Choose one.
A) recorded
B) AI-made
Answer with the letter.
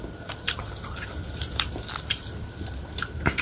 B